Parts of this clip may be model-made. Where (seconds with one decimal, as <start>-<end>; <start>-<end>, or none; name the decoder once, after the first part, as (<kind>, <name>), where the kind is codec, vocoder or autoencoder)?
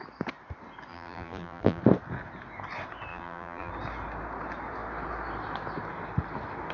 0.9-1.8 (vocoder, BigVGAN v2); 3.1-3.7